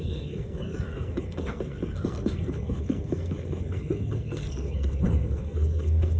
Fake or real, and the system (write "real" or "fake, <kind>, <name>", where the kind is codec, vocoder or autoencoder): fake, codec, SNAC